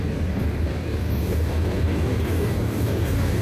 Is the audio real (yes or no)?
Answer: no